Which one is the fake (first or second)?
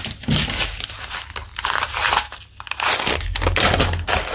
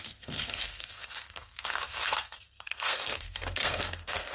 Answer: second